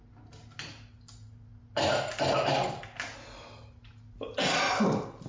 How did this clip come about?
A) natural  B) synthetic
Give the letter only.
A